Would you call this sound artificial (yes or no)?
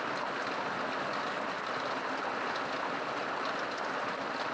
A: no